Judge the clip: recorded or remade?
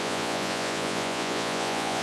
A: remade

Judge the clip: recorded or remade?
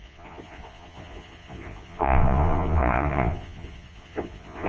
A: remade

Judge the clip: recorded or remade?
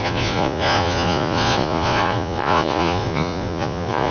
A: remade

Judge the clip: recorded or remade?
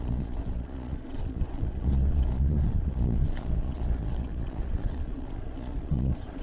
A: remade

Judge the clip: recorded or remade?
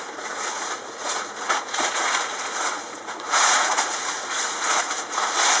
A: remade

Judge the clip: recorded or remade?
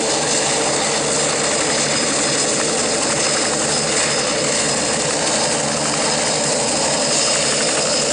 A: recorded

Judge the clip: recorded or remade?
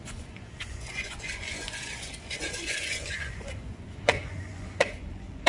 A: remade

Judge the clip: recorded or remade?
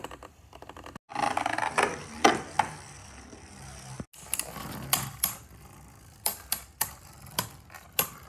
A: recorded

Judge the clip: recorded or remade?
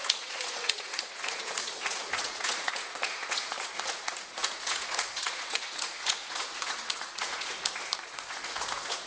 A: remade